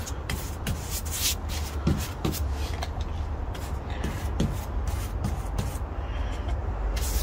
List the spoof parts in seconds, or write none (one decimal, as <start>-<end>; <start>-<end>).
none